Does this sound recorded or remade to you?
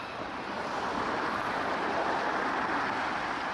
recorded